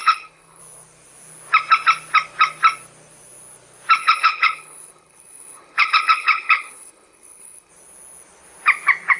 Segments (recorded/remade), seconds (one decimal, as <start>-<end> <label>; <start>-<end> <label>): 0.0-0.6 remade; 0.6-4.0 recorded; 4.0-7.7 remade; 7.7-9.2 recorded